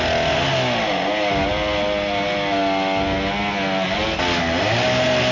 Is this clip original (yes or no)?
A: yes